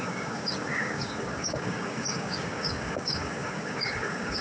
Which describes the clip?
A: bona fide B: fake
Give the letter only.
B